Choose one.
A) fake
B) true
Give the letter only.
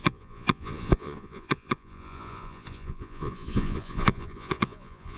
A